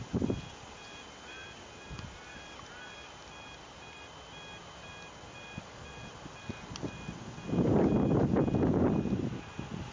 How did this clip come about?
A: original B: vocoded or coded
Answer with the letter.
A